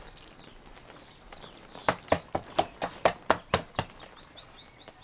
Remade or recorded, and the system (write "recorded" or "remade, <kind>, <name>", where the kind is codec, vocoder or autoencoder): remade, vocoder, BigVGAN v2